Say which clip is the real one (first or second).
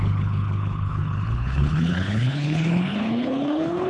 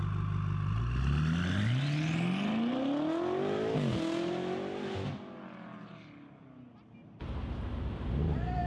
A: second